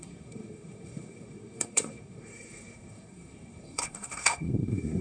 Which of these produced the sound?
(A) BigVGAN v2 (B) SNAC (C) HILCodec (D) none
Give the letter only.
B